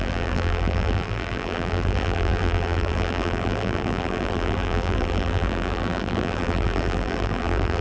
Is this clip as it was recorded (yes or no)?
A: no